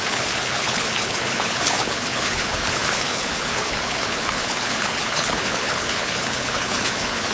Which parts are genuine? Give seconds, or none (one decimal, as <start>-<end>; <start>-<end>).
none

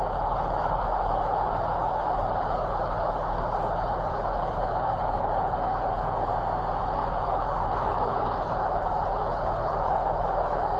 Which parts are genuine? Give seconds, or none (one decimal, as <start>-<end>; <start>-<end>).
6.3-6.8

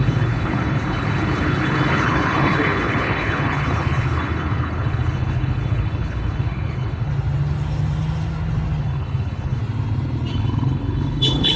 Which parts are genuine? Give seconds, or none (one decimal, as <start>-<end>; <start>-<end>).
7.1-8.8; 9.6-10.3

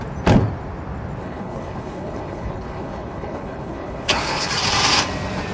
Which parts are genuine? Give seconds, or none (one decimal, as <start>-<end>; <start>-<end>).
0.0-1.2; 4.5-5.5